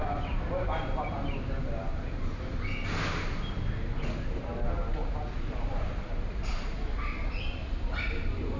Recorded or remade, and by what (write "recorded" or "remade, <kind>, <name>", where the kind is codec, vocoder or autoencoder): recorded